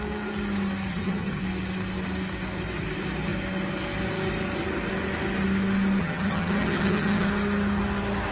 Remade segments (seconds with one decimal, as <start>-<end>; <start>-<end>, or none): 0.9-1.4; 6.0-7.3